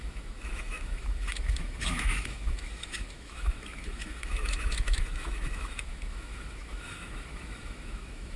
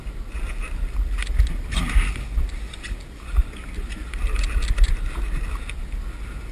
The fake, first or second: first